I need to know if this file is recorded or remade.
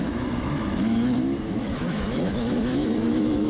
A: remade